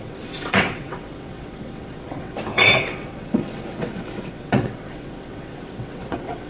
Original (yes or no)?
no